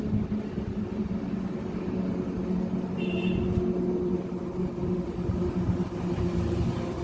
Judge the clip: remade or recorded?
recorded